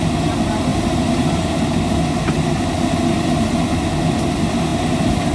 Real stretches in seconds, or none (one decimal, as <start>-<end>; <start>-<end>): 0.0-5.3